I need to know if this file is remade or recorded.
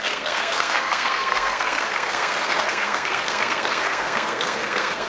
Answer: remade